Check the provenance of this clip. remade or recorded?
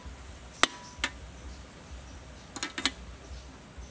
recorded